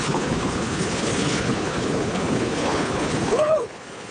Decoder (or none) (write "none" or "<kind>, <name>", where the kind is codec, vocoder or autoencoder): codec, HILCodec